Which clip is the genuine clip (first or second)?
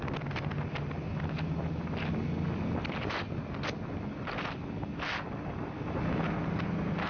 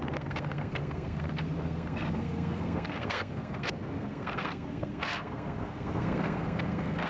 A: first